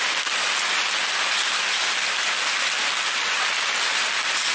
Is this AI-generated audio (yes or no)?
no